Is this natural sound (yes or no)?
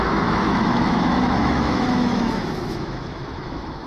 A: no